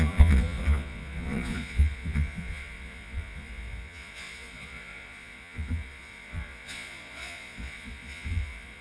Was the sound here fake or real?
fake